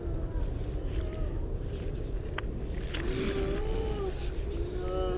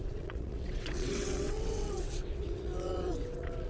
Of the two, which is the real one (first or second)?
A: first